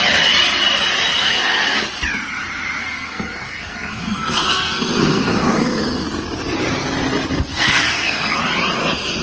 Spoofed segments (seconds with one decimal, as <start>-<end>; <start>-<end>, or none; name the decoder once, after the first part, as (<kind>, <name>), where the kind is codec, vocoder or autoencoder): 1.2-1.8 (codec, SNAC); 2.8-5.8; 7.5-8.4